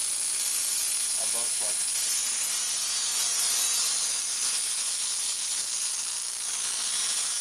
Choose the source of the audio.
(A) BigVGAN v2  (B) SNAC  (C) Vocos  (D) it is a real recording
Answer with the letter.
D